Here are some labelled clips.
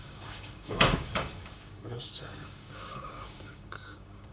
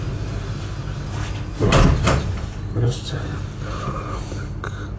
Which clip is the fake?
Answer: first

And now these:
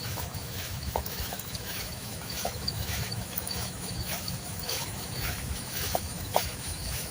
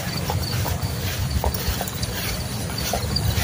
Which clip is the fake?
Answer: first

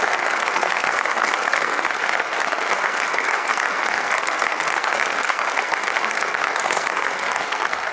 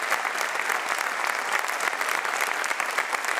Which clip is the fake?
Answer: first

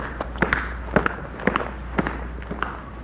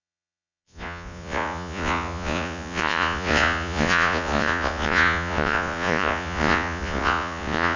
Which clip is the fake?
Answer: second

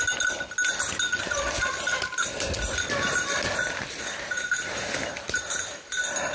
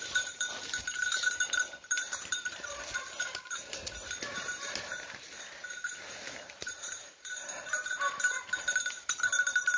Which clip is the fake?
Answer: second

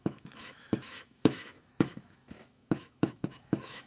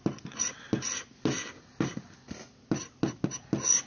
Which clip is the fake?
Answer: first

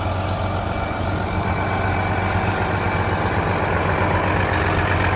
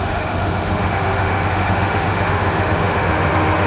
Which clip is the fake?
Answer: second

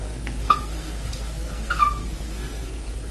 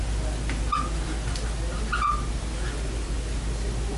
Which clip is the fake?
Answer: first